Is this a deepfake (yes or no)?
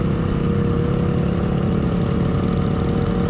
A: no